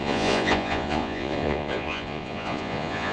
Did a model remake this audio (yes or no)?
yes